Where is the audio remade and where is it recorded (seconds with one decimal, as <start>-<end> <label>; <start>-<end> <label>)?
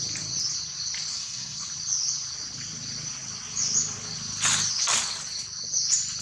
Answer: 0.0-1.1 recorded; 1.1-1.7 remade; 1.7-6.2 recorded